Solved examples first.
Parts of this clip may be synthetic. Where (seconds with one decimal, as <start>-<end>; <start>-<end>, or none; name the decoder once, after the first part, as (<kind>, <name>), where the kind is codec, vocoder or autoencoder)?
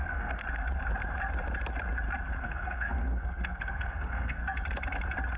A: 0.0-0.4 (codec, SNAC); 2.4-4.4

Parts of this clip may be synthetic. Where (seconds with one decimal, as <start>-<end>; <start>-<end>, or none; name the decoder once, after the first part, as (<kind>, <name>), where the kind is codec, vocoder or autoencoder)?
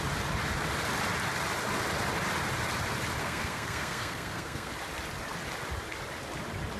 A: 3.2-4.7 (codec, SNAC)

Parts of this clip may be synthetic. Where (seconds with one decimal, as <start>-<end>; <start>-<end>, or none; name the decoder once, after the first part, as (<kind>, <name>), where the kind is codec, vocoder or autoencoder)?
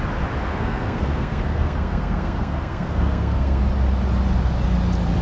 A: 0.5-3.6 (codec, SNAC)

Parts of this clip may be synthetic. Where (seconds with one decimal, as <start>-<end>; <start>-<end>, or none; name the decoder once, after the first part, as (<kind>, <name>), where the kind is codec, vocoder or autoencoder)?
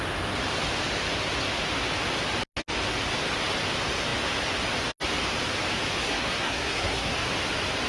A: 6.0-7.1 (codec, SNAC)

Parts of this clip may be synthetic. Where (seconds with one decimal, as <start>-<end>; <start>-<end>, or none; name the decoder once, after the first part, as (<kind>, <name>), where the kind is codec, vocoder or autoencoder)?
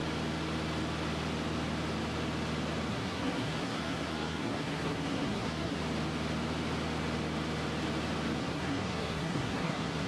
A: 2.9-5.8 (codec, SNAC); 8.4-10.1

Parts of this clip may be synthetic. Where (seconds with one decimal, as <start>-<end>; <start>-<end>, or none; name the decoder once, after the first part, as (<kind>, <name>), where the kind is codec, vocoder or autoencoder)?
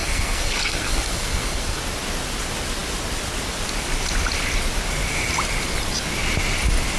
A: 0.0-1.8 (codec, SNAC)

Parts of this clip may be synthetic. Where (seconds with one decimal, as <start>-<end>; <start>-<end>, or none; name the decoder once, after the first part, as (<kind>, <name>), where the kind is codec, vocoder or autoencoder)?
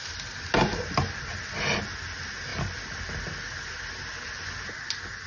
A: none